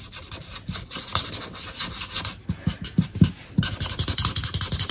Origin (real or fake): real